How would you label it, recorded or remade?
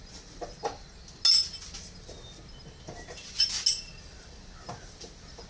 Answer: recorded